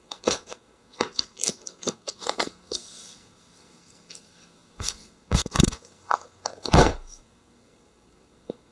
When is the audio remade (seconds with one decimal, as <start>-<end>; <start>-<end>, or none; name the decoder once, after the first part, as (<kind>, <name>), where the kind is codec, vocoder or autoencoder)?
0.0-8.7 (codec, SNAC)